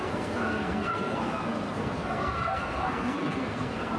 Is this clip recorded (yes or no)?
no